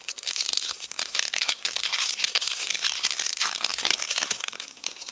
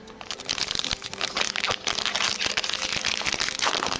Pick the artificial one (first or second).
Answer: first